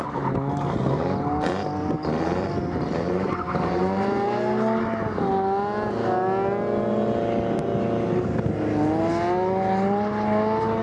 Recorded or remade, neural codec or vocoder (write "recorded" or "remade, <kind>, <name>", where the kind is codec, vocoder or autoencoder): recorded